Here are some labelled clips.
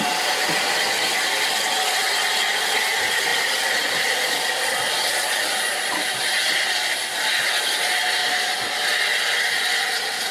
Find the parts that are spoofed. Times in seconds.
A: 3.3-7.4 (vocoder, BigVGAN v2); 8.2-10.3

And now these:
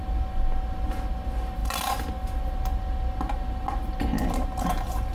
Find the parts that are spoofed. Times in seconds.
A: none